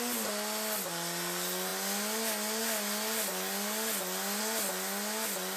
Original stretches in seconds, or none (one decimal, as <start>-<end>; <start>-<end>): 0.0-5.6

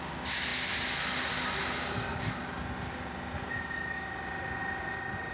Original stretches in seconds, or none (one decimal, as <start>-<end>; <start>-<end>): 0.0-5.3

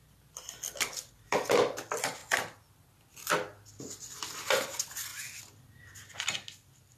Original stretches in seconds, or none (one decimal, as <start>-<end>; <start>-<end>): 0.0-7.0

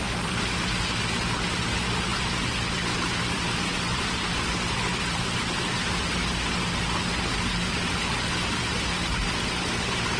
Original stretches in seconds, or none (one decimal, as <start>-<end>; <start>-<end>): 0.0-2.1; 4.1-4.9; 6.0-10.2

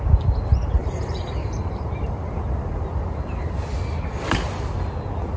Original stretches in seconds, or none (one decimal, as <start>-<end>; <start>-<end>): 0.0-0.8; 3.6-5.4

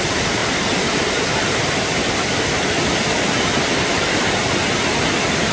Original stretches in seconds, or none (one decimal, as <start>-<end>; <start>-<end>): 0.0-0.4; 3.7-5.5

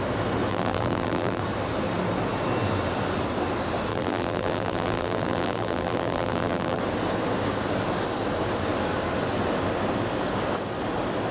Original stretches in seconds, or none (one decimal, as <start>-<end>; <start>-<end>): 0.0-0.5; 1.4-3.9; 6.8-11.3

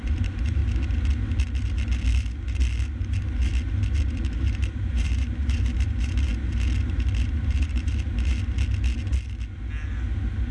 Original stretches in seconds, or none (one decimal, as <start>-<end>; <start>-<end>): 0.6-3.0; 3.5-4.3; 6.3-7.4; 7.9-10.5